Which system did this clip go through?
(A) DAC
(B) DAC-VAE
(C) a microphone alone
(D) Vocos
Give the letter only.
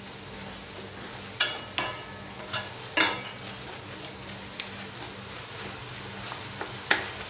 C